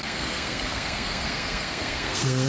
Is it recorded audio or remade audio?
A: remade